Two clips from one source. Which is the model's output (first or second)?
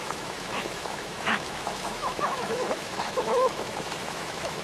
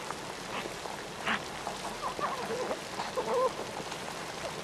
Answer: first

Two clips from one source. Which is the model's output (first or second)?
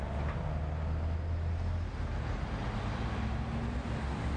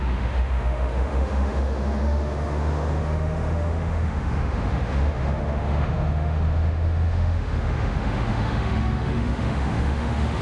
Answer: second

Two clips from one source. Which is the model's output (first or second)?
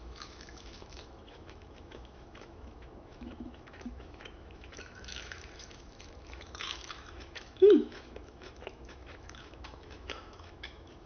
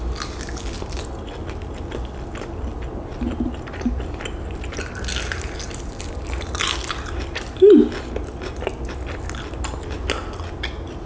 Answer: first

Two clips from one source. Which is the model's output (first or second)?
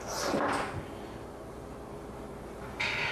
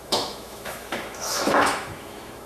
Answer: second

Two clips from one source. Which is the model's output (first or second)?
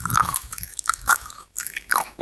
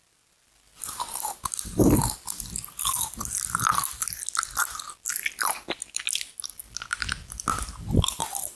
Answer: first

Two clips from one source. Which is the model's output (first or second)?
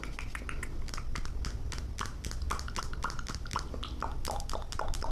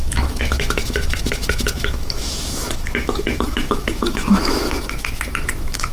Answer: second